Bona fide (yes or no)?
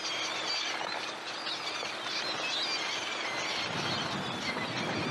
yes